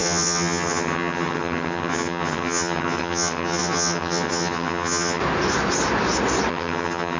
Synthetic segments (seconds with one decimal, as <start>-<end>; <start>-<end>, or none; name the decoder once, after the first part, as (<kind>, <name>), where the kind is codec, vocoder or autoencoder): 0.0-5.2 (vocoder, HiFi-GAN); 6.5-7.2

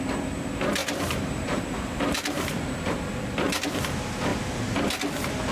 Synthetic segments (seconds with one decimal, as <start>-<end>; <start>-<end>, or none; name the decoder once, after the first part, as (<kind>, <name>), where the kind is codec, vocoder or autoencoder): 0.8-3.8 (vocoder, BigVGAN v2)

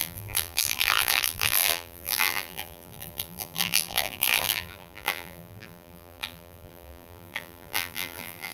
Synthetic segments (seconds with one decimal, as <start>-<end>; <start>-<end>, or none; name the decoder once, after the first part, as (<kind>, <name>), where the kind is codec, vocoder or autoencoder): 0.0-8.5 (vocoder, BigVGAN v2)

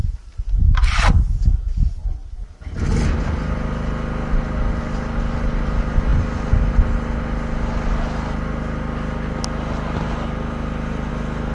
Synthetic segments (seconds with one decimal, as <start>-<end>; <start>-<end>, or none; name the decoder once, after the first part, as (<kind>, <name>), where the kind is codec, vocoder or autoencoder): none

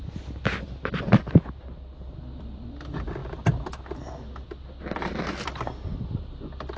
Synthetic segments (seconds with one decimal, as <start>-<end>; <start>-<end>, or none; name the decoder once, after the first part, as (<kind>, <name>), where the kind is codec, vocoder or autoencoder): 1.1-2.2 (vocoder, BigVGAN v2)